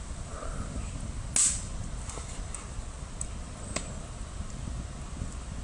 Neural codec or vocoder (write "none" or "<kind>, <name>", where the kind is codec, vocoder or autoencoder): none